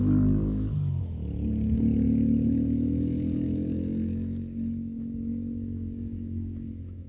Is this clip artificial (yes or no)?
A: yes